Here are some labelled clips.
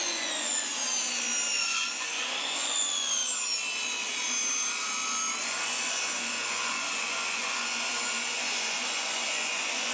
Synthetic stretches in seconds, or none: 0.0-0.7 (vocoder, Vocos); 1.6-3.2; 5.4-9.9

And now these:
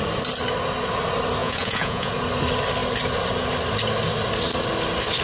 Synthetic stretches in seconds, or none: 1.4-2.1 (vocoder, Vocos)

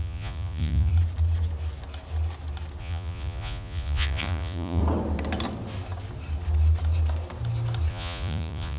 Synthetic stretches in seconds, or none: 0.0-0.9 (vocoder, Vocos); 2.8-4.8; 7.9-8.8

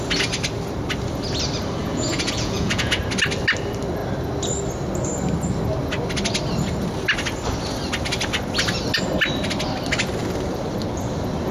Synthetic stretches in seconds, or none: 1.8-3.0 (vocoder, Vocos)

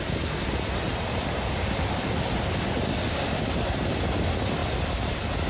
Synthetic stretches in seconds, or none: none

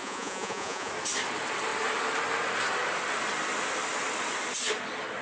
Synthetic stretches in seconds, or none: 0.0-0.9 (vocoder, Vocos)